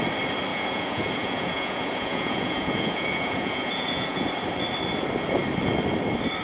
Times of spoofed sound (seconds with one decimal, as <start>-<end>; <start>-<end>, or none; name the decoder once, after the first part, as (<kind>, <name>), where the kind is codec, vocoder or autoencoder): 0.5-4.3 (vocoder, Vocos)